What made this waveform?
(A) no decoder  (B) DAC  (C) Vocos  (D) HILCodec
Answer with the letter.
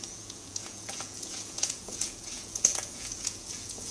C